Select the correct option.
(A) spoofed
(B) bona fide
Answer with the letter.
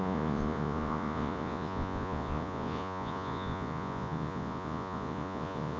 A